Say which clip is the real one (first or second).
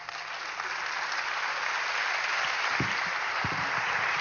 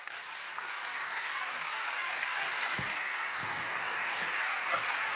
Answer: first